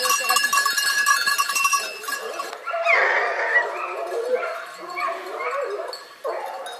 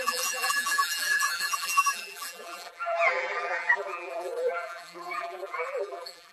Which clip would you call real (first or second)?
first